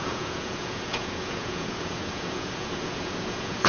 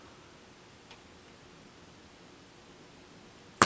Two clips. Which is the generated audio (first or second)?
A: first